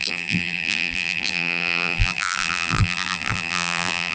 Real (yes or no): no